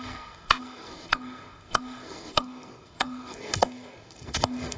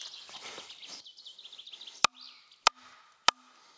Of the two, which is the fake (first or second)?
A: first